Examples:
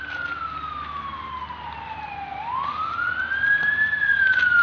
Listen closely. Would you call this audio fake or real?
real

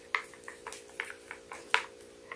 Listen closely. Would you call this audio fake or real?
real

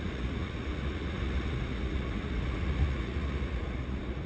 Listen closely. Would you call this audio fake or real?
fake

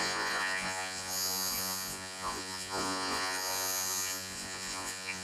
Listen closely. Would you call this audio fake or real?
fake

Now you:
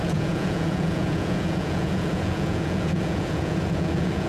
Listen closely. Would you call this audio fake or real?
fake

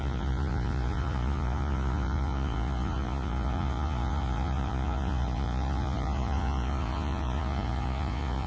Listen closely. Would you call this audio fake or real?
fake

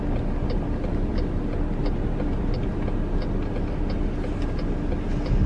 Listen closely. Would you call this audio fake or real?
real